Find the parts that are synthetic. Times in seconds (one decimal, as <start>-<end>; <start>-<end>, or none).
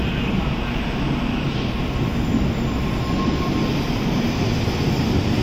none